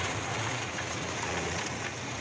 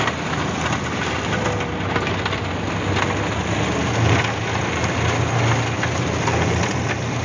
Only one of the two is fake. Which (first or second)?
first